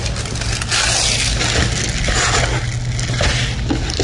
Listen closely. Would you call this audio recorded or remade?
recorded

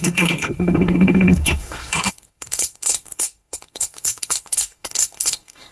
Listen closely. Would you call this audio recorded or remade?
remade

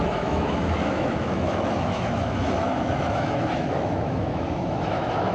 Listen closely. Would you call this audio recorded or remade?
remade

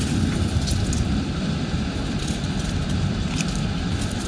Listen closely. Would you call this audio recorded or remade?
recorded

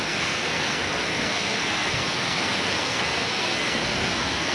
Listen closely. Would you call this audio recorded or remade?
remade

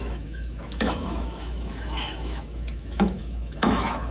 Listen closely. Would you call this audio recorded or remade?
remade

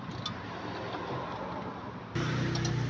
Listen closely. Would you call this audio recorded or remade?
recorded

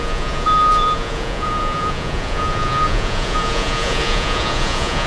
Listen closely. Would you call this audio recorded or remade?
remade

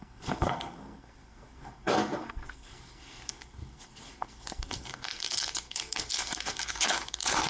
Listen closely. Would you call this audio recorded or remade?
remade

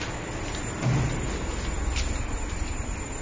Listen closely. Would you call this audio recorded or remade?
recorded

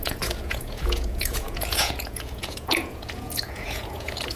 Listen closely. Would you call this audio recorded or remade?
remade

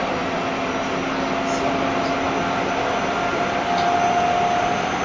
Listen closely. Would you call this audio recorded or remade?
recorded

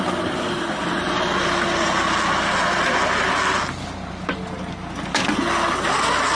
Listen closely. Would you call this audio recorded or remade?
recorded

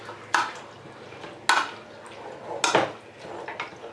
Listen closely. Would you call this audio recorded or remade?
recorded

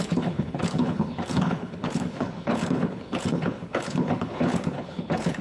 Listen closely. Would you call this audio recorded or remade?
remade